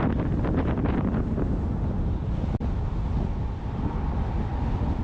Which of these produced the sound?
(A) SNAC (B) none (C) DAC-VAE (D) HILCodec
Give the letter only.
B